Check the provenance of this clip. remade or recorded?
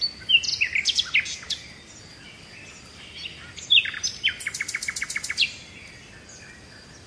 recorded